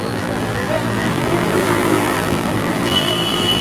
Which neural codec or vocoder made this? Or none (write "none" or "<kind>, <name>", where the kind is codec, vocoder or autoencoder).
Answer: vocoder, BigVGAN v2